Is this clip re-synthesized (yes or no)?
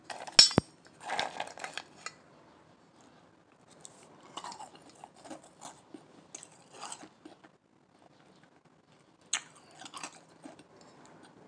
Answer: no